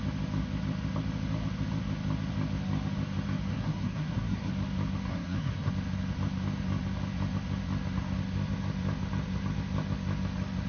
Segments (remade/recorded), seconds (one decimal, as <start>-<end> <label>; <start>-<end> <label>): 0.0-3.5 recorded; 3.5-4.5 remade; 4.5-5.1 recorded; 5.1-5.7 remade; 5.7-10.7 recorded

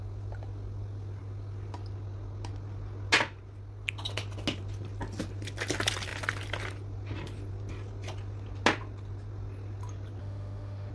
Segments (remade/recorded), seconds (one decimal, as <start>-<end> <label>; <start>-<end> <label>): 0.0-10.2 recorded; 10.2-10.9 remade

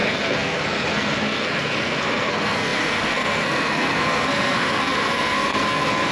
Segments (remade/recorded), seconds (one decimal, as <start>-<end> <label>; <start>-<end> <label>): 0.0-6.1 remade